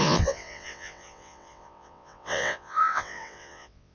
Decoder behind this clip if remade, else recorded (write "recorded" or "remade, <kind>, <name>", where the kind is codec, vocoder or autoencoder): remade, vocoder, WaveNeXt